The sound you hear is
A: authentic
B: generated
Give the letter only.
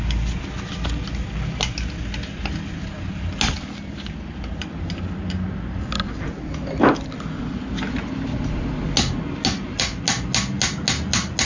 A